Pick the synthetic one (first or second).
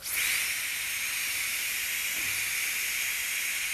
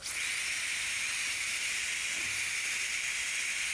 second